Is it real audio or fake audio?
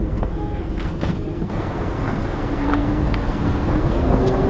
fake